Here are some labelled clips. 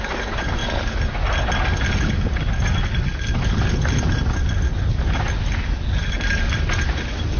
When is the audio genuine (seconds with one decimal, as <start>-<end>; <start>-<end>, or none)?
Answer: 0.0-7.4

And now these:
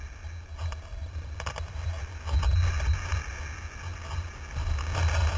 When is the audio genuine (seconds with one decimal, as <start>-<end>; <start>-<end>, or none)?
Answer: 0.0-0.9; 2.1-5.4

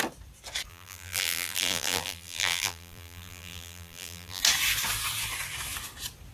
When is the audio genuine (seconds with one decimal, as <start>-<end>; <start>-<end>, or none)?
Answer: 0.0-0.7; 4.4-6.3